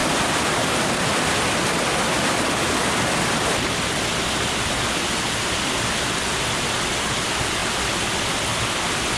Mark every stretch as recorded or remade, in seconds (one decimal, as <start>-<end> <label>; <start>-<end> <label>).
0.0-9.2 recorded